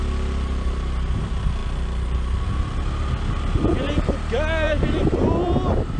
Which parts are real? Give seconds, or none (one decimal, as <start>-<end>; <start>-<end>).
0.0-6.0